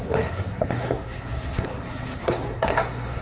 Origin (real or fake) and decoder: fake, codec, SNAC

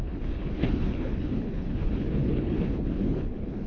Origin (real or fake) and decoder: fake, codec, HILCodec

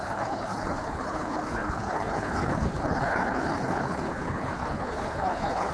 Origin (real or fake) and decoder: fake, codec, HILCodec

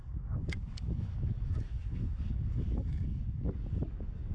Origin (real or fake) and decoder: fake, codec, DAC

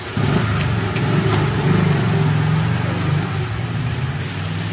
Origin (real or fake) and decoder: real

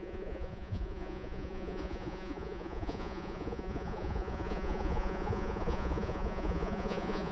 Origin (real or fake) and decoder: fake, vocoder, Vocos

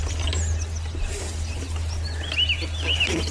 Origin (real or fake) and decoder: real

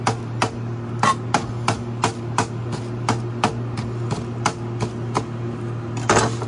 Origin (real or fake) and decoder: real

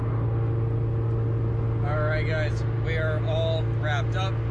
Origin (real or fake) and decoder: real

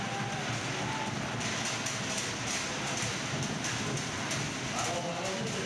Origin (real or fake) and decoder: real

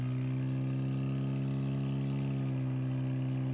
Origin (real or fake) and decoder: real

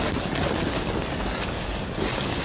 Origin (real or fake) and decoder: real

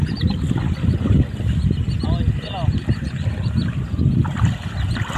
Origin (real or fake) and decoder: real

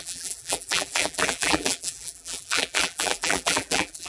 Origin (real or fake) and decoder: fake, vocoder, BigVGAN v2